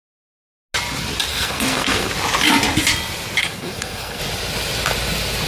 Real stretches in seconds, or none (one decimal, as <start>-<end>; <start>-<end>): 0.0-1.3; 2.1-3.4; 4.2-5.5

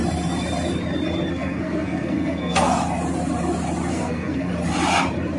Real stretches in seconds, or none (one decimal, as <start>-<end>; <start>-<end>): 0.0-1.3; 2.7-3.9; 4.5-5.4

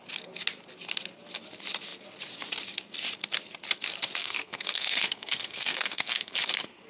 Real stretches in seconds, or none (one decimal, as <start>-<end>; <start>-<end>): 0.0-4.2; 6.5-6.9

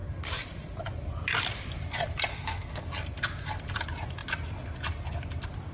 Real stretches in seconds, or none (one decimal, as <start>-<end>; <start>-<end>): 0.0-2.3; 2.8-5.7

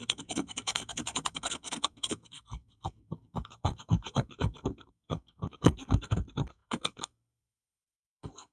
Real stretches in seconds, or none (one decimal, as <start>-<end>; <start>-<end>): none

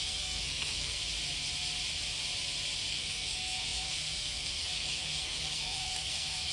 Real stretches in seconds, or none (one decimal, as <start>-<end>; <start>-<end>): 1.0-2.9